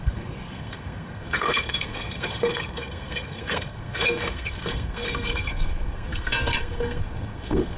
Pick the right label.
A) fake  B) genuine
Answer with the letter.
A